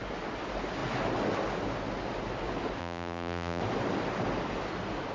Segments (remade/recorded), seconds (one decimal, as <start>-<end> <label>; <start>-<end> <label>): 0.0-2.8 recorded; 2.8-3.6 remade; 3.6-5.1 recorded